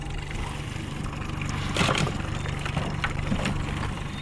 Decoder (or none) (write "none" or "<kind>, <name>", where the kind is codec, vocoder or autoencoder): none